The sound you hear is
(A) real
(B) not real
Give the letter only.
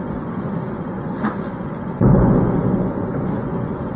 B